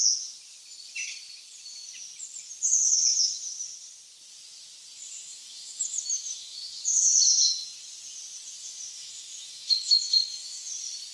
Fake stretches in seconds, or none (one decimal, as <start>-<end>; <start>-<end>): 5.2-6.8; 8.6-10.7